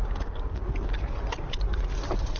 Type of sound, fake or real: real